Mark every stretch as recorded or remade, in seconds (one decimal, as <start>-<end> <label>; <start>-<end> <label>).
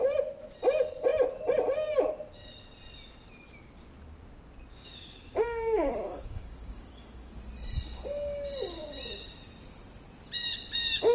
0.0-4.7 recorded; 4.7-7.3 remade; 7.3-11.1 recorded